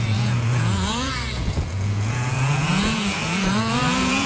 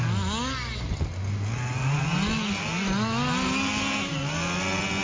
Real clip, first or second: second